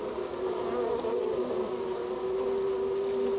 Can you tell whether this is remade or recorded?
recorded